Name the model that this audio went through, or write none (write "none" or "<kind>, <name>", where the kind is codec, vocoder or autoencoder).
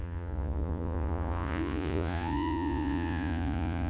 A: vocoder, Vocos